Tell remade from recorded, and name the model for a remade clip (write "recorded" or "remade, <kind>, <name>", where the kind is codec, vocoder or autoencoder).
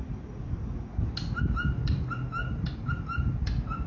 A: recorded